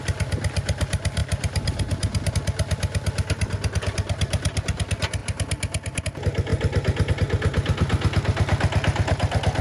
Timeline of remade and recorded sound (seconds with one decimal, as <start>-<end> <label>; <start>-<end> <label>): 0.0-1.2 recorded; 1.2-2.3 remade; 2.3-9.6 recorded